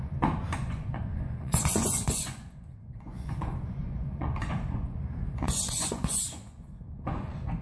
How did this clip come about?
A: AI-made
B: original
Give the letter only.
A